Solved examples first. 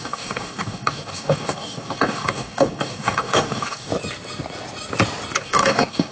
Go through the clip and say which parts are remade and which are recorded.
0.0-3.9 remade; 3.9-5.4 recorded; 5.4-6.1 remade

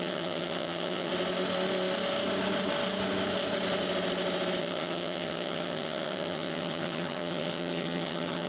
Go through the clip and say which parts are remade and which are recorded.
0.0-1.1 remade; 1.1-4.6 recorded; 4.6-8.5 remade

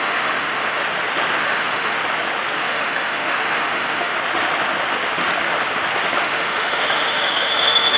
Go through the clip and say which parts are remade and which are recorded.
0.0-0.8 remade; 0.8-1.4 recorded; 1.4-2.0 remade; 2.0-2.6 recorded; 2.6-4.1 remade; 4.1-6.2 recorded; 6.2-8.0 remade

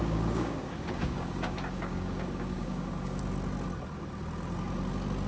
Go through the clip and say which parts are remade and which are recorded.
0.0-3.2 remade; 3.2-5.3 recorded

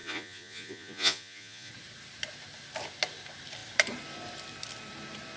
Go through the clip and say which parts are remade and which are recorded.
0.0-1.7 remade; 1.7-5.4 recorded